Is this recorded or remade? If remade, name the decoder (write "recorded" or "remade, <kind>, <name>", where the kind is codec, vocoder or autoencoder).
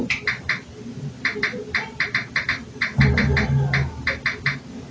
recorded